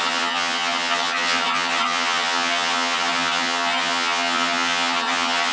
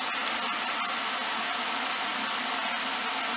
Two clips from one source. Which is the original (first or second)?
second